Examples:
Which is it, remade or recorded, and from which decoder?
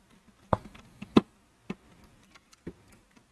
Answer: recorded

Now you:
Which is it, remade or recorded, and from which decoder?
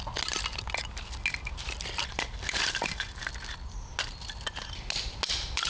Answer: recorded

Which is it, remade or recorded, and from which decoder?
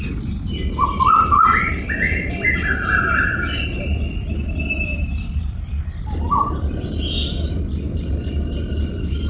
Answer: recorded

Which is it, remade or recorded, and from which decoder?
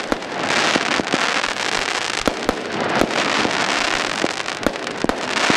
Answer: recorded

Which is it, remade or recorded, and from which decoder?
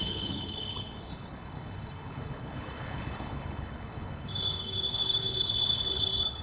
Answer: remade, codec, HILCodec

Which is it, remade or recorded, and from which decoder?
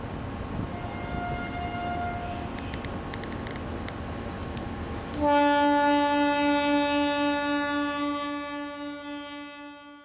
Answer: recorded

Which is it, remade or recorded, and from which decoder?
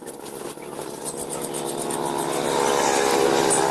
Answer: recorded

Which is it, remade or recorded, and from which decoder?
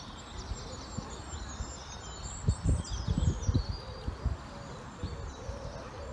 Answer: recorded